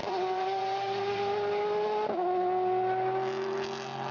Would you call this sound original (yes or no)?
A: yes